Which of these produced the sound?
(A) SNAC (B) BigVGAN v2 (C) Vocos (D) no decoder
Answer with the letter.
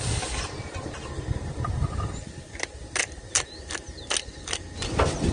D